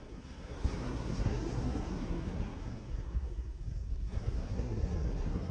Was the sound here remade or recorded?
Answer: remade